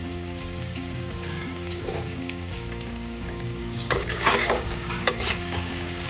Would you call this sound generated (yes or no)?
yes